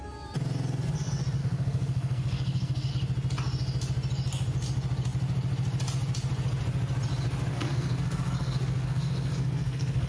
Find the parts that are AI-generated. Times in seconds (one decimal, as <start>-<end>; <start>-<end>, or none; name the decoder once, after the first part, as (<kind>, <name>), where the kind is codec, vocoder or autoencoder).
1.4-2.9 (codec, SNAC); 7.5-10.1